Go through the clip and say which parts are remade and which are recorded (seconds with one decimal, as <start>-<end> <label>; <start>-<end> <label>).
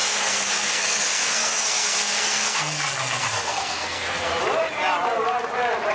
0.0-4.3 remade; 4.3-5.9 recorded